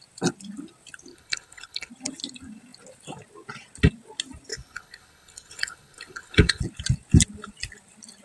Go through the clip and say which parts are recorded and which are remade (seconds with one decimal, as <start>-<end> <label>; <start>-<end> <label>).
0.0-1.1 recorded; 1.1-1.9 remade; 1.9-4.5 recorded; 4.5-6.6 remade; 6.6-8.2 recorded